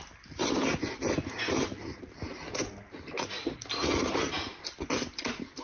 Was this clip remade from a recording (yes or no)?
no